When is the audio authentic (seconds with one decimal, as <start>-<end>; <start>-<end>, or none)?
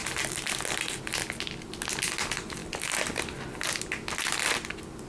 0.0-5.1